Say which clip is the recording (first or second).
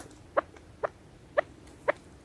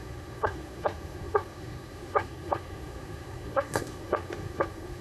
first